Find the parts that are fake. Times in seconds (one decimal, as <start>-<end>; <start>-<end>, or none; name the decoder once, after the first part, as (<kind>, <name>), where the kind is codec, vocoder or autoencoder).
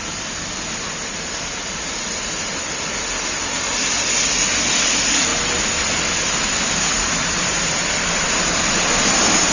none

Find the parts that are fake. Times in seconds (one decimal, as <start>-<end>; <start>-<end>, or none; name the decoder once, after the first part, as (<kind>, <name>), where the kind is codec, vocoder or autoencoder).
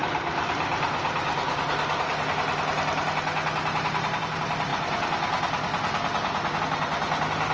none